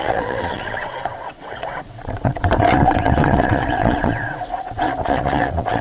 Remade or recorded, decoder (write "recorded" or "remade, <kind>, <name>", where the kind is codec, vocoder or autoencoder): remade, vocoder, WaveNeXt